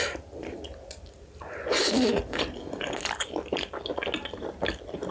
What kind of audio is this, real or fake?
real